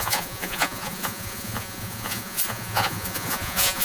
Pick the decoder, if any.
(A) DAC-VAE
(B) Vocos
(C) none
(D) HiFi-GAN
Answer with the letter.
B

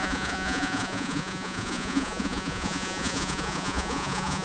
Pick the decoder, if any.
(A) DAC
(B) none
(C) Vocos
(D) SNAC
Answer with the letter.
C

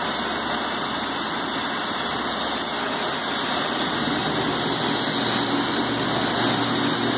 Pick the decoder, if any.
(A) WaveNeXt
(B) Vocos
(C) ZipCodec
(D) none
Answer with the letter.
D